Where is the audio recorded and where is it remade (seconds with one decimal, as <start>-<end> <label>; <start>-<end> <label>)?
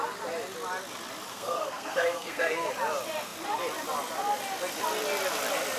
0.0-1.3 recorded; 1.3-2.7 remade; 2.7-5.8 recorded